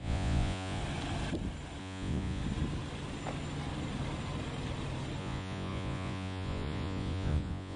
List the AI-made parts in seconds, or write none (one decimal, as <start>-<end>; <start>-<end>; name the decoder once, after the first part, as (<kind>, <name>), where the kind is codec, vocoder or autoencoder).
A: 0.0-0.8 (vocoder, Vocos); 1.8-2.4; 5.2-7.8

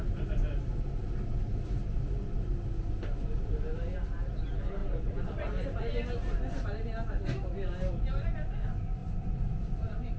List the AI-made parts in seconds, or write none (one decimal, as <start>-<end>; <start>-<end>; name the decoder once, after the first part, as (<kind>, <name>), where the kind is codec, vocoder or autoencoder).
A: none

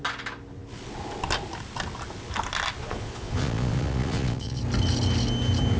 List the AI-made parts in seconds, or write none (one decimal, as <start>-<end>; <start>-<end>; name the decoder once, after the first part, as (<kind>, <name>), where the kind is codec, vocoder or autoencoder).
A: 2.8-4.6 (vocoder, Vocos)

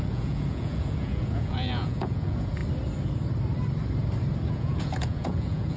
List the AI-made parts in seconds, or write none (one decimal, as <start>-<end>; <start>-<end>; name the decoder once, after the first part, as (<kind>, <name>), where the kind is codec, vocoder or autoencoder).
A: 0.0-2.6 (vocoder, Vocos); 4.5-5.8